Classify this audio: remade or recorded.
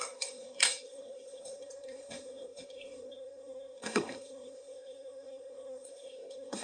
remade